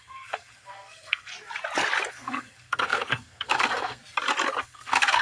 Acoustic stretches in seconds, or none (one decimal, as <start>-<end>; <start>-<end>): 1.3-2.1; 4.0-4.6